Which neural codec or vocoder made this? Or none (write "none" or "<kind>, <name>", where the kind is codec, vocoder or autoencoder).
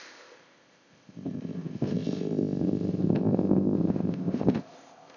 codec, ZipCodec